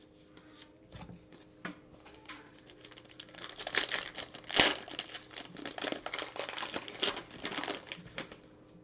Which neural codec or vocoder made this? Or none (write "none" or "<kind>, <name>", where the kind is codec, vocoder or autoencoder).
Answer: none